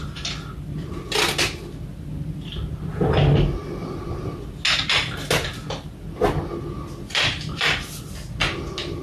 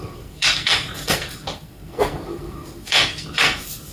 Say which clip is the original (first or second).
first